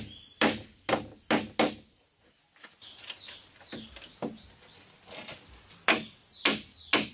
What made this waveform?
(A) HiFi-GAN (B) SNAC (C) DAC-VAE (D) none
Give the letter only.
D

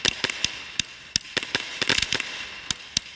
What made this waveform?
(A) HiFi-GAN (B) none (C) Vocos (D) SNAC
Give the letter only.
B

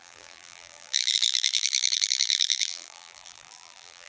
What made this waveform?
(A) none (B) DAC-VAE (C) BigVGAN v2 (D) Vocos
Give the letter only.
C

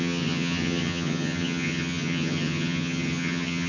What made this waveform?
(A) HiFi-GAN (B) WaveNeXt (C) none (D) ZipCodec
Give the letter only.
A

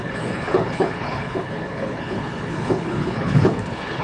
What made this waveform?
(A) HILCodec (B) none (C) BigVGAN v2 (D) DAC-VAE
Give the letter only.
A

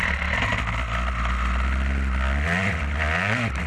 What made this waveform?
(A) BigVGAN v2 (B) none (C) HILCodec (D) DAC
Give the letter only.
B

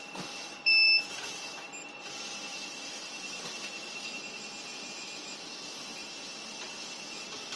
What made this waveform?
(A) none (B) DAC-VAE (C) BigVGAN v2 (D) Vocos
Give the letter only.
C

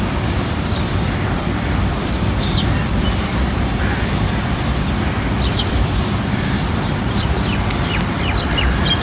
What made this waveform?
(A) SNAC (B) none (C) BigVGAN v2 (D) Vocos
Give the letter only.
C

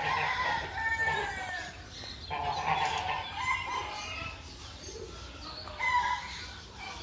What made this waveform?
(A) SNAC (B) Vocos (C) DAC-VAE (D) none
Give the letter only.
D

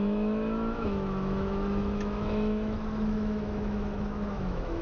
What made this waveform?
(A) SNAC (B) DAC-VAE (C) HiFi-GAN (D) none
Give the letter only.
B